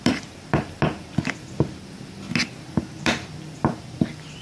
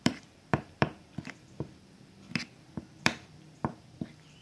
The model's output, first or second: second